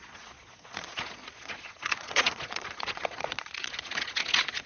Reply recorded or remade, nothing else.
remade